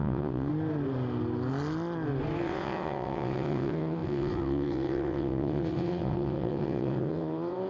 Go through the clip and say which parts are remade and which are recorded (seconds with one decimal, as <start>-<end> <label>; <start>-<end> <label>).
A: 0.0-0.5 remade; 0.5-2.4 recorded; 2.4-7.7 remade